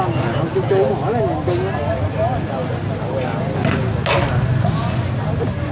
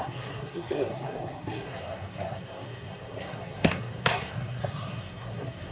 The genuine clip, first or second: first